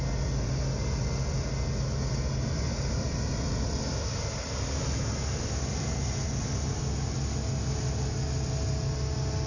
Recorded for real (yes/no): yes